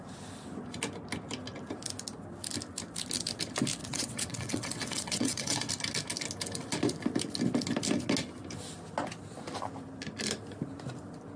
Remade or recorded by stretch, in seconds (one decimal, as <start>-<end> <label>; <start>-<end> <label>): 0.0-3.8 recorded; 3.8-5.7 remade; 5.7-11.4 recorded